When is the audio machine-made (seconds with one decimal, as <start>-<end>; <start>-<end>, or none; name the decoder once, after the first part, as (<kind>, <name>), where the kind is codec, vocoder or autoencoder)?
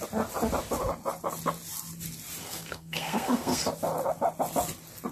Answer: 2.4-3.6 (codec, SNAC)